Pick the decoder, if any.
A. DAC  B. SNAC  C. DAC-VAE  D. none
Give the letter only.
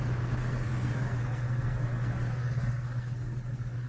B